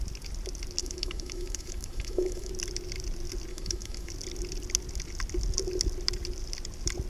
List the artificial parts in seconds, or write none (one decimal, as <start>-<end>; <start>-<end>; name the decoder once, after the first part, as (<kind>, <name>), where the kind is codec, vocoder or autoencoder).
0.8-2.5 (autoencoder, DAC-VAE); 3.5-4.1